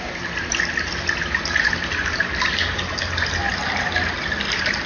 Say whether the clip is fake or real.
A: real